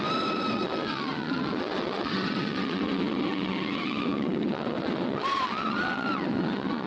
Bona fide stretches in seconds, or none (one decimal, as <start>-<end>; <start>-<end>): none